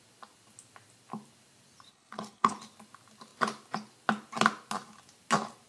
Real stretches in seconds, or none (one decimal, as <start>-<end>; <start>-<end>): 0.0-1.9; 2.5-5.7